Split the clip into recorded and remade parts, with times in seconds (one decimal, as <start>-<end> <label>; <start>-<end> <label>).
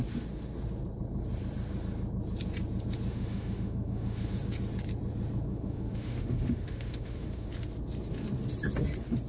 0.0-3.1 recorded; 3.1-4.3 remade; 4.3-5.5 recorded; 5.5-7.5 remade; 7.5-9.3 recorded